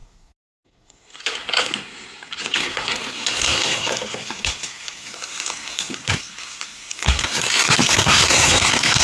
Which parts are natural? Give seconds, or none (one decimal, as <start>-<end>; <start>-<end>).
none